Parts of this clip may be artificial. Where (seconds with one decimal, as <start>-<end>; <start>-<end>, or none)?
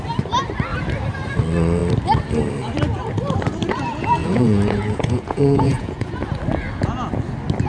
4.2-6.4